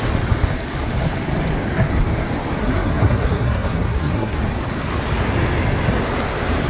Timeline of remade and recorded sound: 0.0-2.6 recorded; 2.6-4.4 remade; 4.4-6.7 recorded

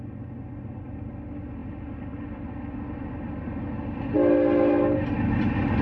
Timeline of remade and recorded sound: 0.0-5.8 recorded

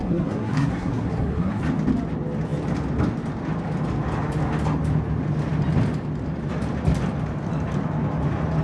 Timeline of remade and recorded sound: 0.0-1.6 remade; 1.6-8.6 recorded

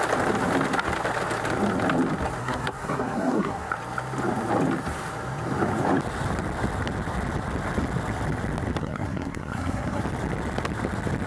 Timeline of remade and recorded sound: 0.0-2.4 recorded; 2.4-3.7 remade; 3.7-8.8 recorded; 8.8-10.0 remade; 10.0-11.3 recorded

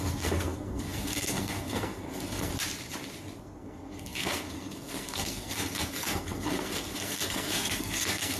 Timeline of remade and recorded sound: 0.0-2.5 remade; 2.5-3.4 recorded; 3.4-8.4 remade